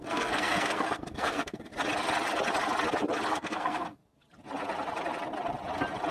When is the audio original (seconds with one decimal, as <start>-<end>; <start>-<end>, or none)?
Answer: 1.7-3.3; 4.0-6.1